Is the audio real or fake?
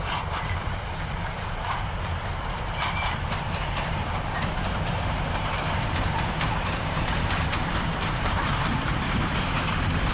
fake